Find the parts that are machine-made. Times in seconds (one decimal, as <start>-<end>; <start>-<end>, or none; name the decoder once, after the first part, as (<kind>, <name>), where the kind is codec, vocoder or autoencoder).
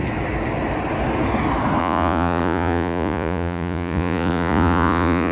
1.8-5.3 (vocoder, Vocos)